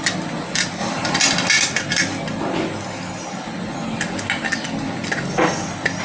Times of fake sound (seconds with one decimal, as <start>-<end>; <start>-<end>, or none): none